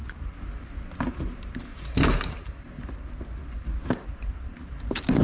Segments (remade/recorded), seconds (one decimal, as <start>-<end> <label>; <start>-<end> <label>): 0.0-1.7 recorded; 1.7-2.5 remade; 2.5-3.4 recorded; 3.4-5.2 remade